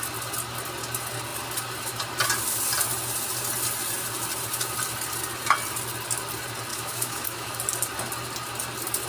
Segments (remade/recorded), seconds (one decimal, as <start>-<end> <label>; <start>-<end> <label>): 0.0-6.7 recorded; 6.7-7.6 remade; 7.6-9.1 recorded